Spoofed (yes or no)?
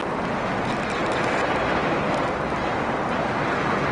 no